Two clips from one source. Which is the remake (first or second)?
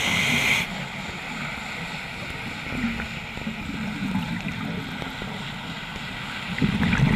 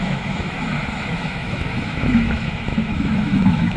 second